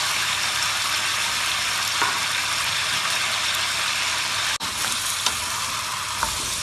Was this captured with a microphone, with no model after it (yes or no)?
no